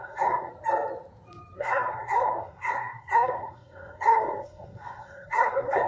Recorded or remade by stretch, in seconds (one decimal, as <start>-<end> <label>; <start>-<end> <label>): 0.0-0.5 remade; 0.5-1.6 recorded; 1.6-5.9 remade